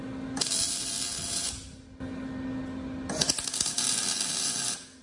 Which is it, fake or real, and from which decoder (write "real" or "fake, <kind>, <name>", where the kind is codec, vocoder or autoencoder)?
real